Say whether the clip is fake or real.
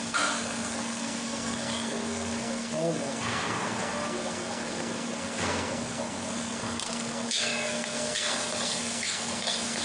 fake